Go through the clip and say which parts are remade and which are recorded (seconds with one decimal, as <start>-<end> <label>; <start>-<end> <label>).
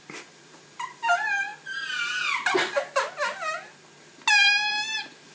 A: 0.0-1.5 remade; 1.5-4.7 recorded; 4.7-5.3 remade